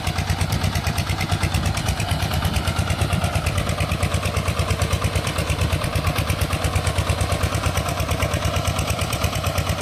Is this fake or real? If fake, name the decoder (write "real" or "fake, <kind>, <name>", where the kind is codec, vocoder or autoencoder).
fake, vocoder, BigVGAN v2